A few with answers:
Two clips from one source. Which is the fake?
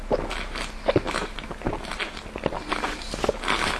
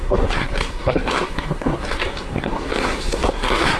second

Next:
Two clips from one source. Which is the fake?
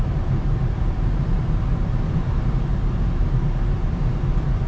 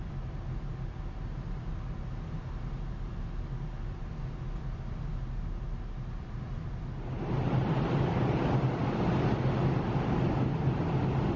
first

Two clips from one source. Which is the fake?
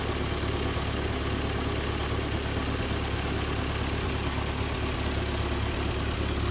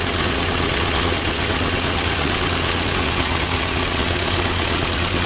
second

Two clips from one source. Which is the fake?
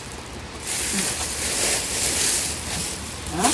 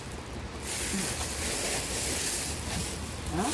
first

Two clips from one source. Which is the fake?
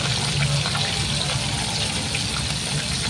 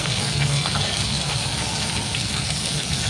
second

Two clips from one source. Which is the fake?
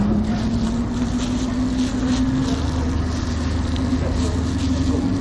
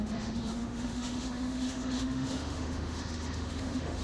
second